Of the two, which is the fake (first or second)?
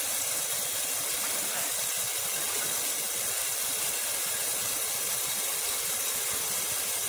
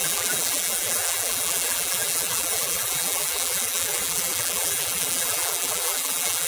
second